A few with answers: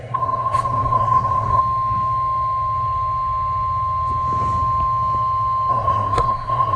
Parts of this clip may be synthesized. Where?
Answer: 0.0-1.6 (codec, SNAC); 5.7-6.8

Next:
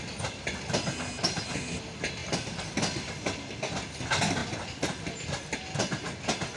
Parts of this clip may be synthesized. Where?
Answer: none

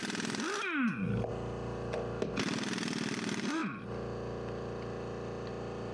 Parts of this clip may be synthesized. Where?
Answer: none

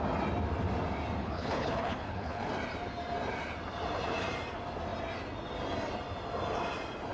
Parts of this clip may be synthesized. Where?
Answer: 1.2-2.5 (codec, HILCodec)

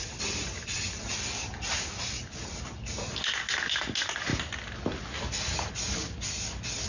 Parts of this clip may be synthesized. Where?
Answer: none

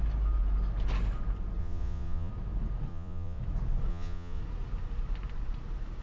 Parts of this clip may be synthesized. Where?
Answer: 1.6-2.3 (vocoder, Vocos); 2.9-3.4; 3.9-4.4